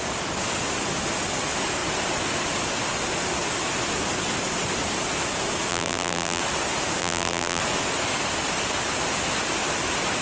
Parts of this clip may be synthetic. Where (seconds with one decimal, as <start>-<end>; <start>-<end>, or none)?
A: 5.7-6.4; 7.0-7.6